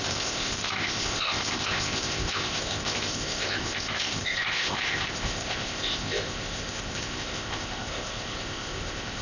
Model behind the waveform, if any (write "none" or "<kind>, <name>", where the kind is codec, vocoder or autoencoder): codec, ZipCodec